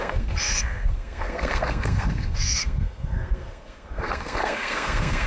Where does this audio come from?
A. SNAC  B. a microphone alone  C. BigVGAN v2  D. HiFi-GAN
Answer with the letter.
A